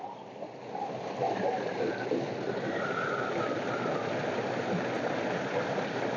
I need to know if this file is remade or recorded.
recorded